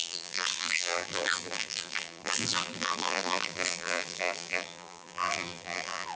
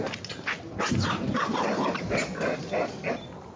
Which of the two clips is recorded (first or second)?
second